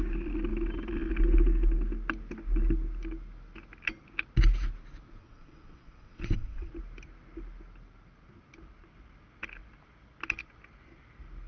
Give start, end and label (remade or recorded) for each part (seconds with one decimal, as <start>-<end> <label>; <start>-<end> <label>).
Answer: 0.0-5.2 recorded; 5.2-6.7 remade; 6.7-11.5 recorded